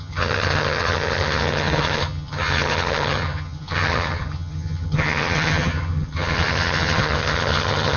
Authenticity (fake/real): fake